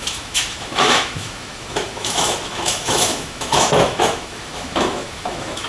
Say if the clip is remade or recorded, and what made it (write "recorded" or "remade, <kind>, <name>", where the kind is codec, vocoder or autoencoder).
remade, autoencoder, DAC-VAE